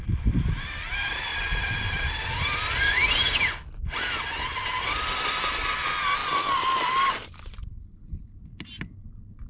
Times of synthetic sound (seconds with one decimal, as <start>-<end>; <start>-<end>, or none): none